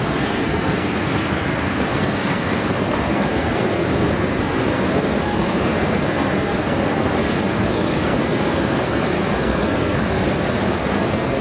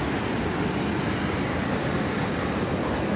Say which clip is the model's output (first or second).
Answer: first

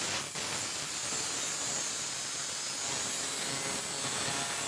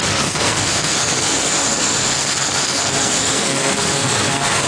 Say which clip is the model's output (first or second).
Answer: second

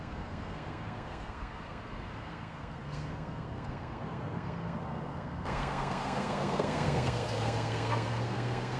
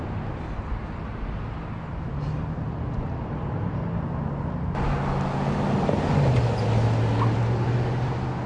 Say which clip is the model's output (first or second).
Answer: first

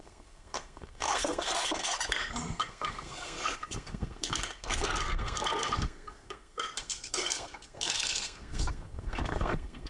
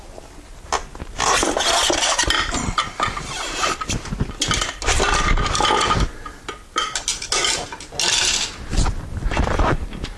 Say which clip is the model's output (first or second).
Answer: first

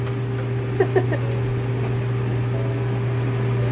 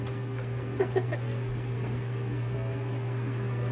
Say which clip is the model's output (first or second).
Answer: second